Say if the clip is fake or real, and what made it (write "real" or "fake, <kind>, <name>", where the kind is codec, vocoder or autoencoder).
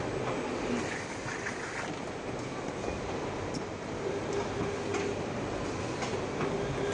real